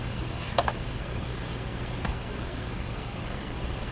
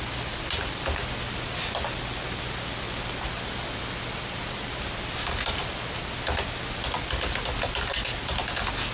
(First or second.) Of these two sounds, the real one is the second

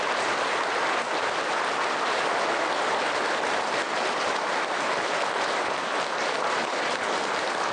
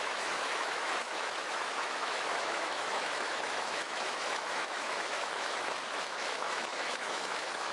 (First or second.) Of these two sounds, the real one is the first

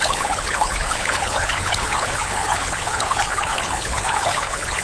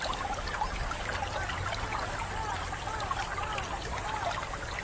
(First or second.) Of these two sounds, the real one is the second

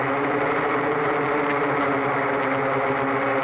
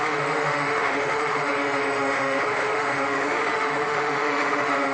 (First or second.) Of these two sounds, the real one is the first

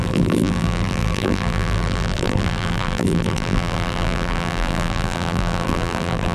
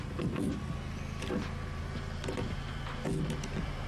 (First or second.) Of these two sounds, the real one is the second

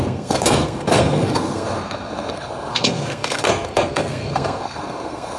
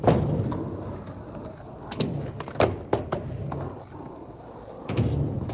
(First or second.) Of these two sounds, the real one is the second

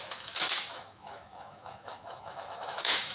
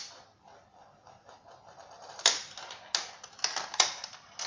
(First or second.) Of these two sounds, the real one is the second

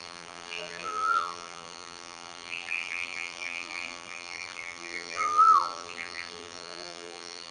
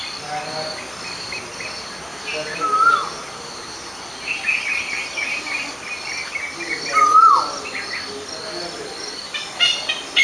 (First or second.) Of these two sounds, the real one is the second